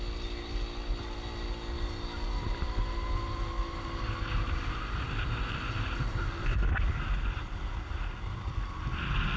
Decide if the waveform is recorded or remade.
recorded